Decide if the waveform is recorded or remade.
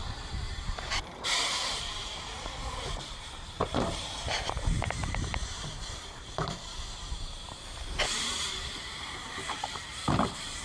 remade